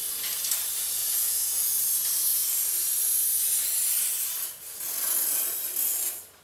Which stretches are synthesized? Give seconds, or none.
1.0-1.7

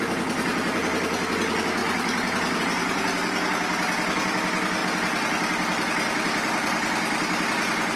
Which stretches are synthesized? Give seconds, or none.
none

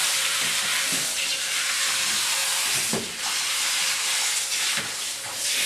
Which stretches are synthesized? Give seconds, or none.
0.0-0.7; 1.9-2.4; 3.2-4.1

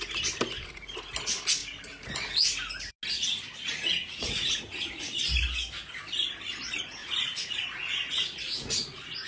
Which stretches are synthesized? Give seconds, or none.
3.7-5.2; 7.0-9.3

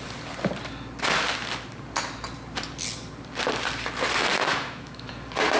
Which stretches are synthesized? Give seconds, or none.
4.5-5.1

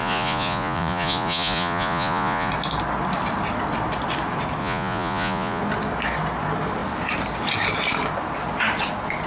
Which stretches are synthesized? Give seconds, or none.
0.0-2.5; 4.6-5.6

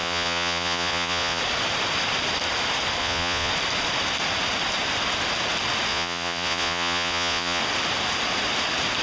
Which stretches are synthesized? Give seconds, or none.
0.0-1.4; 3.0-3.5; 5.9-7.6